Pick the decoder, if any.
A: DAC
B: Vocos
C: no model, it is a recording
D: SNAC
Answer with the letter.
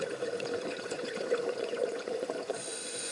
B